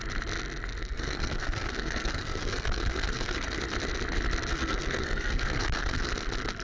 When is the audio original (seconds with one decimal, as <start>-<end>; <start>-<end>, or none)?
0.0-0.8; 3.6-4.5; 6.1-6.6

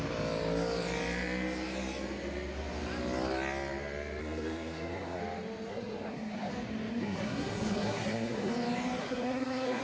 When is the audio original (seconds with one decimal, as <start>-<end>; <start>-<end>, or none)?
0.0-4.2; 5.2-5.7; 6.5-6.9; 8.5-9.0

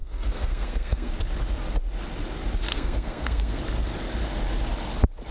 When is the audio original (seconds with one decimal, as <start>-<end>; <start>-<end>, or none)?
1.1-2.7; 3.6-5.3